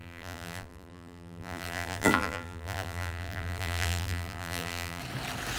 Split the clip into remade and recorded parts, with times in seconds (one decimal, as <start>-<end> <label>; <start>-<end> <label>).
0.0-5.0 remade; 5.0-5.6 recorded